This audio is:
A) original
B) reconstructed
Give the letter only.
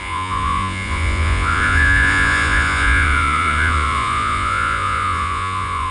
B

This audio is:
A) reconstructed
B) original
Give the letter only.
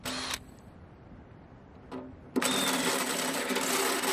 B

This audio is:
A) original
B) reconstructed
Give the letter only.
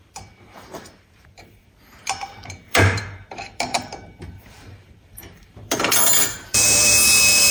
B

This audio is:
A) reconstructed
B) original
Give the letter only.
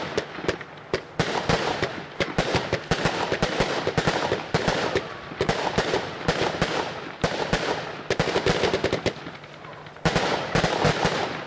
B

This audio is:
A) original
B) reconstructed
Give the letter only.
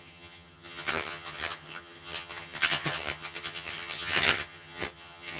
B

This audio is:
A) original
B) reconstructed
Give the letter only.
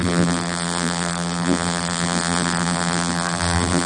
B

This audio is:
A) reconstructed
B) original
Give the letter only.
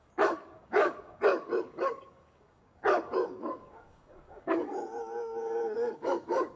A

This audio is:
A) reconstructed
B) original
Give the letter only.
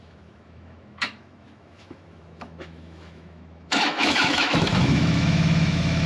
A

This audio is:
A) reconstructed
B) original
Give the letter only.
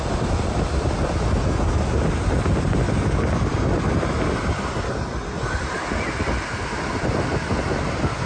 B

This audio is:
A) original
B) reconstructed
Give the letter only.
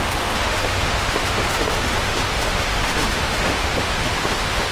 B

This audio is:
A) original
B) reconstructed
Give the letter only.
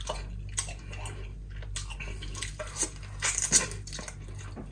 A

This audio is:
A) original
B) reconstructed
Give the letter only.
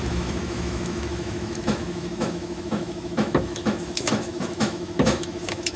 B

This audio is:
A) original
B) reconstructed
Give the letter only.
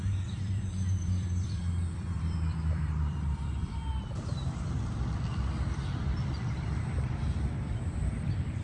B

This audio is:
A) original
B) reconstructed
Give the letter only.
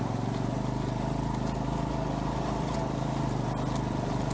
A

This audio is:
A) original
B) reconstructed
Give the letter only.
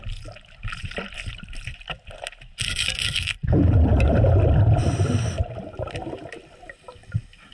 A